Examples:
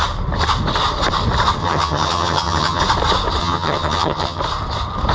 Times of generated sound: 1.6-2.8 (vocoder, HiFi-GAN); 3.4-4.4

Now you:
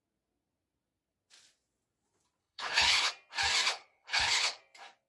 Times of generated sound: 2.4-3.1 (codec, HILCodec); 3.7-4.6

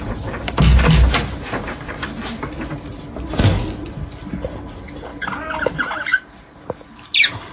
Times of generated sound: 0.0-0.7 (vocoder, BigVGAN v2); 4.3-5.1; 6.6-7.5

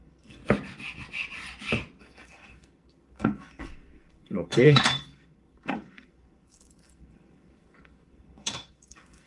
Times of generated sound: 0.0-0.4 (codec, SNAC); 2.0-9.3

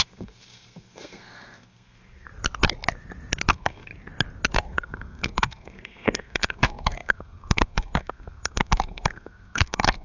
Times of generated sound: 0.0-2.3 (codec, SNAC); 3.5-3.9; 4.5-10.0

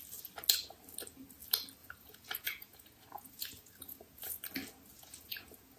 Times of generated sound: 1.8-4.4 (vocoder, Vocos); 4.9-5.8

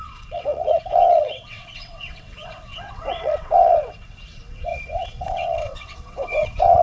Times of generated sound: 0.0-6.8 (vocoder, WaveNeXt)

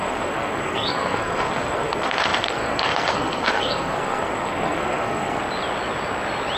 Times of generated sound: 0.0-5.4 (codec, SNAC)